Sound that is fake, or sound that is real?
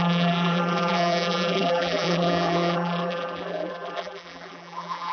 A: fake